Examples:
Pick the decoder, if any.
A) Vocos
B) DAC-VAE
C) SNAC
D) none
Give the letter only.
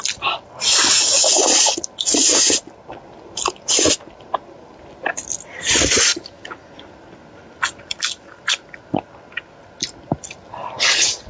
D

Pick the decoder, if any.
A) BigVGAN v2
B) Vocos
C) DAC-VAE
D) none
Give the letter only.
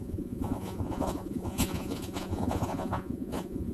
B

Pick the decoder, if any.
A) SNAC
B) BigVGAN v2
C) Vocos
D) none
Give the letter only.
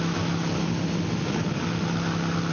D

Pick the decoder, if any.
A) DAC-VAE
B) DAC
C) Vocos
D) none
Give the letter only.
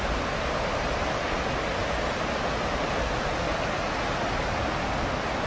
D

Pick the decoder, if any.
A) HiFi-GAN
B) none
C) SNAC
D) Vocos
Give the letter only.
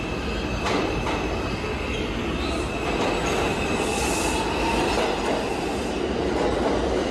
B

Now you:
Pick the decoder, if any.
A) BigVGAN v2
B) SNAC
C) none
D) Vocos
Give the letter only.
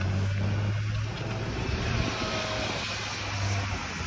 C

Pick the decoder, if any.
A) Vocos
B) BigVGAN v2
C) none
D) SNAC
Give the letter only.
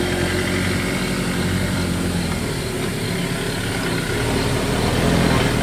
C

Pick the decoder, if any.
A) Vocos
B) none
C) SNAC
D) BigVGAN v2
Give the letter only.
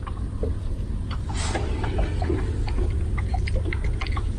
B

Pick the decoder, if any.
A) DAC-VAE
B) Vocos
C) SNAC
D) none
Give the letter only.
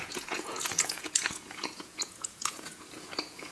B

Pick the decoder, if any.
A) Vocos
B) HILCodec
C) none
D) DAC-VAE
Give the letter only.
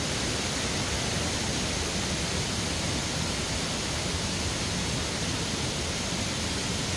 C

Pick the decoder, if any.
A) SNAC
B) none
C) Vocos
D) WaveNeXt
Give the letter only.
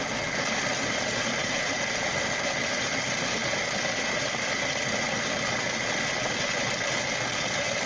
B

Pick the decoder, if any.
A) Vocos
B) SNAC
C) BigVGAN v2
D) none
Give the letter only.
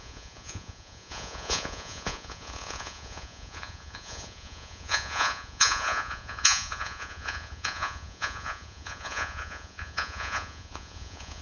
A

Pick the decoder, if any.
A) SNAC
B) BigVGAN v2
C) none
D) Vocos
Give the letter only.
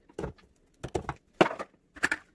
C